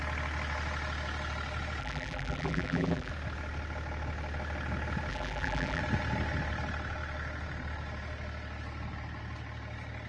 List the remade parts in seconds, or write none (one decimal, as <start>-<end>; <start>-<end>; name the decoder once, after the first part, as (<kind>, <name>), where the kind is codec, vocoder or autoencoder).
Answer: 1.8-3.1 (vocoder, BigVGAN v2); 5.1-5.8